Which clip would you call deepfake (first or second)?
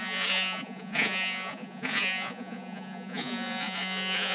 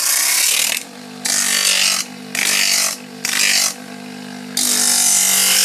first